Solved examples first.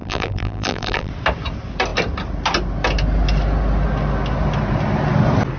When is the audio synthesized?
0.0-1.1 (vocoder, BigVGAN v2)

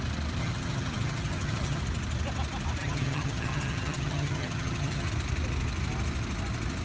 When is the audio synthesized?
0.4-1.8 (vocoder, HiFi-GAN); 2.8-5.1

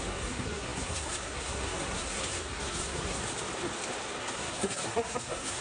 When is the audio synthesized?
0.0-3.2 (codec, SNAC); 4.2-5.6

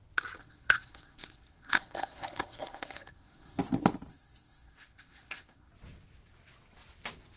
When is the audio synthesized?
0.4-3.6 (codec, SNAC); 4.1-5.7

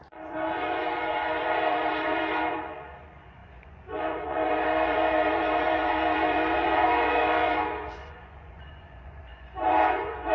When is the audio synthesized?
0.0-10.3 (vocoder, Vocos)

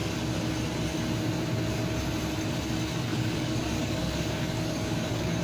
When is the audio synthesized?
3.1-5.4 (codec, DAC)

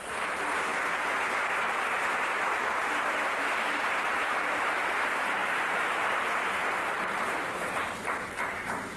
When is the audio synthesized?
0.0-5.4 (vocoder, BigVGAN v2); 6.8-8.0; 8.5-9.0

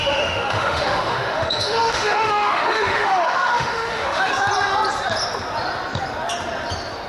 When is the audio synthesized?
0.0-4.3 (autoencoder, DAC-VAE)